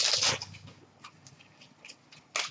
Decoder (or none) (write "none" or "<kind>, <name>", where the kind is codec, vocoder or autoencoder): none